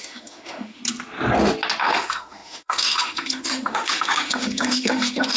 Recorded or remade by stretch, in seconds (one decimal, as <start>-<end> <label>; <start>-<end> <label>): 0.0-0.8 remade; 0.8-1.8 recorded; 1.8-5.4 remade